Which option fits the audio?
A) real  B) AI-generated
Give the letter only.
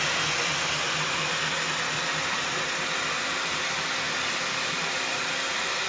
A